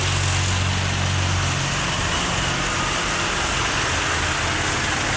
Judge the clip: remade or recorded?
recorded